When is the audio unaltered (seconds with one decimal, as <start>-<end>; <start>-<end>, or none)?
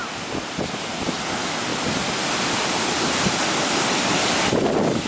0.0-5.1